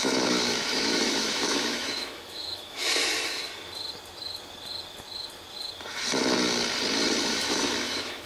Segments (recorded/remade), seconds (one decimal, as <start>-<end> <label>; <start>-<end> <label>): 0.0-3.4 remade; 3.4-7.3 recorded; 7.3-8.3 remade

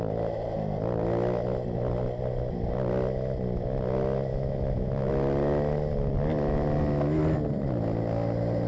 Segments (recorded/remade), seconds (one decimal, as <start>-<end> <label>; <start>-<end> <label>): 0.0-4.3 recorded; 4.3-5.1 remade; 5.1-8.7 recorded

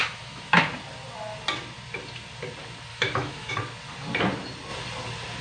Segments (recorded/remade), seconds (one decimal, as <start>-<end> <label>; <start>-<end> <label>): 0.0-0.6 remade; 0.6-2.9 recorded; 2.9-3.5 remade; 3.5-5.4 recorded

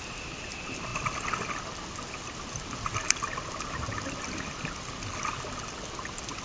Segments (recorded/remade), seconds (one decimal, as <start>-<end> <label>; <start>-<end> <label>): 0.0-6.4 recorded

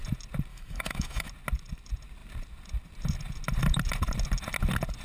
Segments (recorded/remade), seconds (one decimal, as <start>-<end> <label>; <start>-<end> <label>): 0.0-0.5 recorded; 0.5-1.3 remade; 1.3-5.0 recorded